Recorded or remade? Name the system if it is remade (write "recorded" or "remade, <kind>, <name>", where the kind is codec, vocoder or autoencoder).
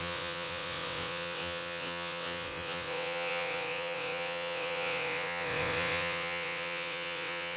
remade, vocoder, WaveNeXt